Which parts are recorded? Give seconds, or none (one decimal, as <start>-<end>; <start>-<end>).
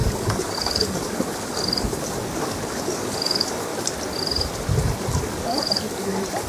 3.7-5.2